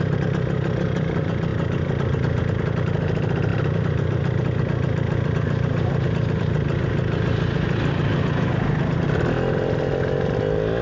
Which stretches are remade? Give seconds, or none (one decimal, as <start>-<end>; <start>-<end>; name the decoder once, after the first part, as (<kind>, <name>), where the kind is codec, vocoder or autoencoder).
none